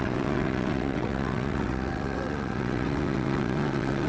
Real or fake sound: fake